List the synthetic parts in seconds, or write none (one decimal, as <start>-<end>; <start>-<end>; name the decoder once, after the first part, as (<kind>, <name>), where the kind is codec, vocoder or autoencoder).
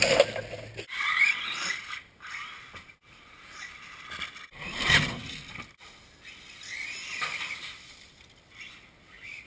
7.0-8.7 (vocoder, BigVGAN v2)